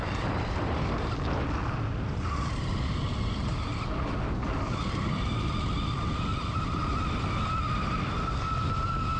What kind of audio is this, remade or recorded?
recorded